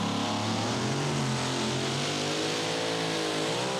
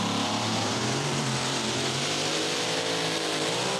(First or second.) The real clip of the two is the first